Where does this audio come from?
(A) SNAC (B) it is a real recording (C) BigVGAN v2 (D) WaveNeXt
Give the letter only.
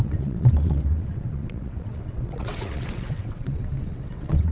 D